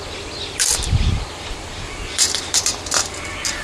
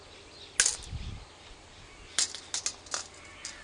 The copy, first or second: first